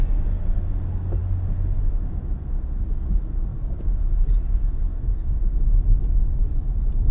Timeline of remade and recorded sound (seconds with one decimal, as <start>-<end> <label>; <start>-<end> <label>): 0.0-7.1 recorded